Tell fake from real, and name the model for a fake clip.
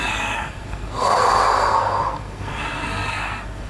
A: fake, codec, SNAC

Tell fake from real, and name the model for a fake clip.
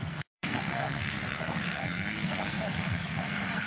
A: fake, codec, SNAC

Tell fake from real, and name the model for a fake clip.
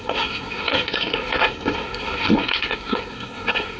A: fake, codec, SNAC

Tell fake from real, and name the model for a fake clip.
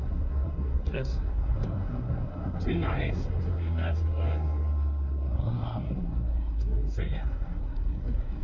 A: fake, codec, SNAC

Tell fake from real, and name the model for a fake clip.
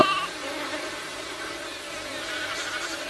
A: real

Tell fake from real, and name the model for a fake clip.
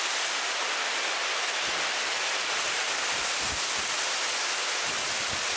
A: real